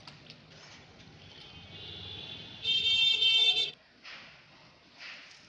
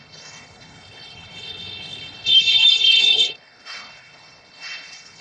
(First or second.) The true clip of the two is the first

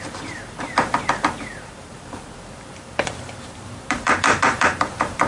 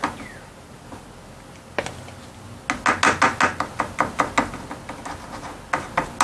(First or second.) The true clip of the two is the second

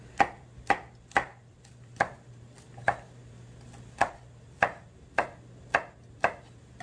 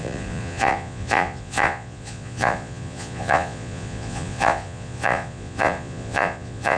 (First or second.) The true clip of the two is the first